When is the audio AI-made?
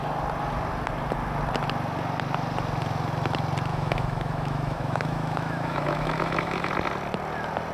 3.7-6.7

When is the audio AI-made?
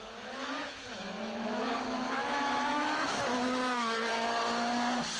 0.0-4.1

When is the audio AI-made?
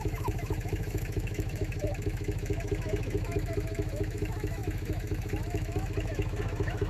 0.0-6.9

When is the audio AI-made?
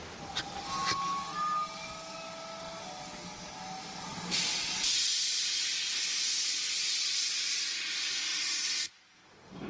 none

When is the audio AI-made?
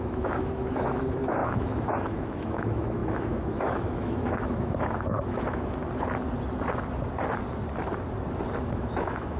0.0-5.8; 8.6-9.4